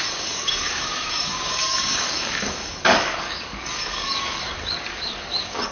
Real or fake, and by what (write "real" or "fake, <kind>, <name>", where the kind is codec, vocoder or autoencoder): fake, codec, DAC